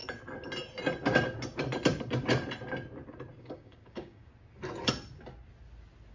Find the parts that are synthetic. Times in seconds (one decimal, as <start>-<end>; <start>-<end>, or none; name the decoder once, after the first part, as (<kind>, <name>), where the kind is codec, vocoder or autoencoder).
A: 3.4-4.3 (codec, DAC)